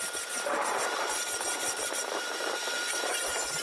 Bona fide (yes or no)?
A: no